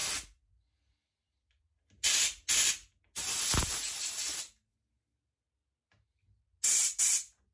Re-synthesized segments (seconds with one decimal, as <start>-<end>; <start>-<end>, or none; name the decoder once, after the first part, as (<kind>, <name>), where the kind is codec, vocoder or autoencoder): none